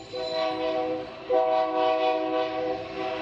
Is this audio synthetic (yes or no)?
no